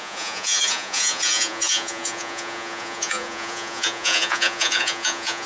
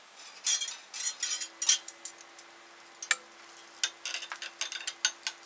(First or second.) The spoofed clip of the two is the first